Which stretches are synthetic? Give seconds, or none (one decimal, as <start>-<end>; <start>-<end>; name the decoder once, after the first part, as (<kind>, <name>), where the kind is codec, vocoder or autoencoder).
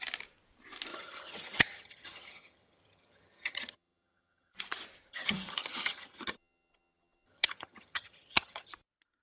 0.9-4.5 (vocoder, HiFi-GAN); 5.1-8.7